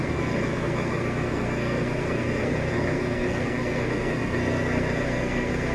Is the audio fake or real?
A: fake